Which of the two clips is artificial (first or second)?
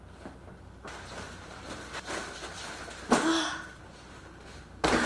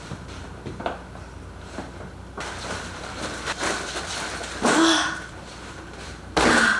second